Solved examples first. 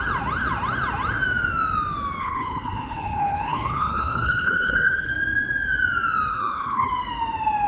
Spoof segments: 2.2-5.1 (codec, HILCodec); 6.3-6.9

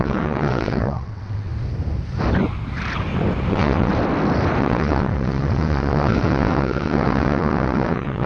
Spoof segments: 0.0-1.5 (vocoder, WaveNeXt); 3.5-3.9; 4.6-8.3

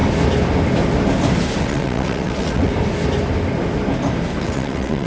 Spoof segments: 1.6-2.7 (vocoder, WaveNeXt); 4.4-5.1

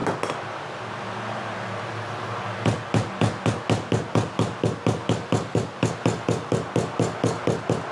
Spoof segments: none